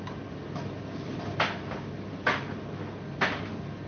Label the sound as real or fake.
real